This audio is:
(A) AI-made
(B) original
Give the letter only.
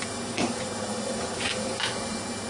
A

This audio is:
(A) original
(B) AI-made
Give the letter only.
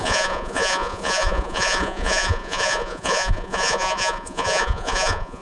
B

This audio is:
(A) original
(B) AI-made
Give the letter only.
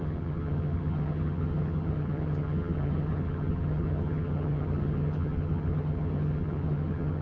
B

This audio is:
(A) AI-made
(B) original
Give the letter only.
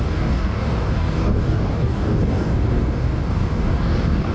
A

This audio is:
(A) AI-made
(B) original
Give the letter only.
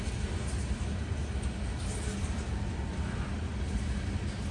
B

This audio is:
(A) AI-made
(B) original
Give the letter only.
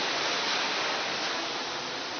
B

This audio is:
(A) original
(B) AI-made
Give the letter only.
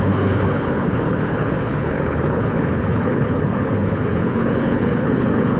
B